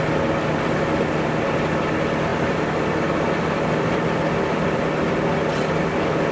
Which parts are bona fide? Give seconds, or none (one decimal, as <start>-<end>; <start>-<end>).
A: 0.0-6.3